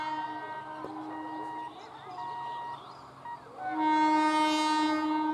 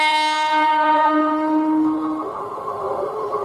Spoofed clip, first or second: second